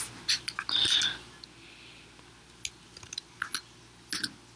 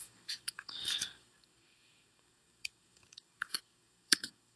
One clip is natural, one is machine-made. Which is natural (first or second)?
first